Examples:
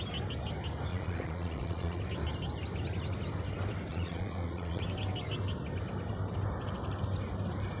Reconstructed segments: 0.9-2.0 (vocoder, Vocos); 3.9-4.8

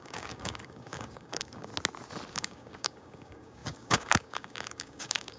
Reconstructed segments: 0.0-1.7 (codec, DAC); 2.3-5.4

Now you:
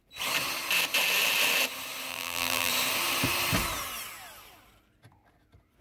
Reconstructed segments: 2.1-2.7 (vocoder, BigVGAN v2)

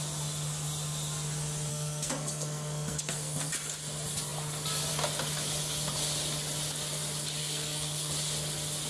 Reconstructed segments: 1.7-3.5 (codec, SNAC); 7.4-8.1